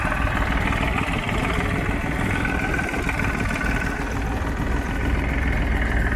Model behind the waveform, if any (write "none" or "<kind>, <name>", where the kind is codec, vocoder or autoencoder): none